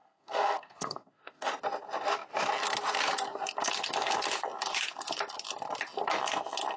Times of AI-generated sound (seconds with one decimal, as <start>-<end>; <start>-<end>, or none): 0.0-1.5